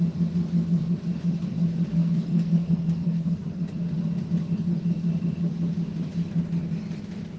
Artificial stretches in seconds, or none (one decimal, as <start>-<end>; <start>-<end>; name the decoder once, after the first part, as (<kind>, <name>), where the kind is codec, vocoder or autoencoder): 1.9-3.9 (codec, SNAC)